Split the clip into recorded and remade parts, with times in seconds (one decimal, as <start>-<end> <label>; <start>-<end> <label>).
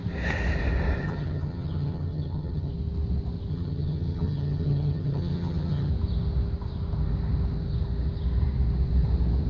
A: 0.0-1.0 recorded; 1.0-2.7 remade; 2.7-3.5 recorded; 3.5-5.9 remade; 5.9-9.5 recorded